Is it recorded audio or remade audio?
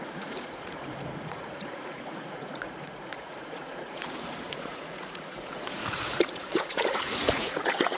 remade